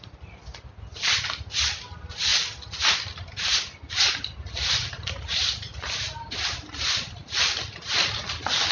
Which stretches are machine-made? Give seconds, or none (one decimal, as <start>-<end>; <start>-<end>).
none